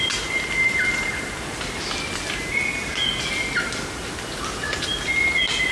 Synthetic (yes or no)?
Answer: no